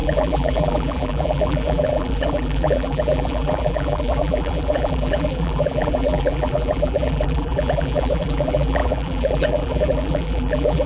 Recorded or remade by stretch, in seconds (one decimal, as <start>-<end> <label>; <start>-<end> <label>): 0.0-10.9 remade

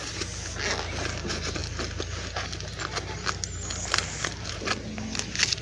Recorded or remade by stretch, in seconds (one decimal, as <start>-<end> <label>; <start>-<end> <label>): 0.0-5.6 recorded

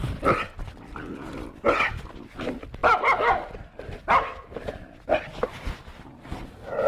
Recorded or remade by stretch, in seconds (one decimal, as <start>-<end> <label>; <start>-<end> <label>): 0.0-1.1 remade; 1.1-6.9 recorded